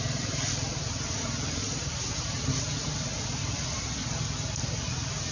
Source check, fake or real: real